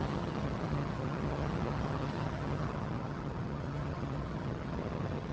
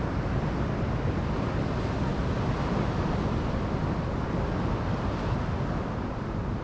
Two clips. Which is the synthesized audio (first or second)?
first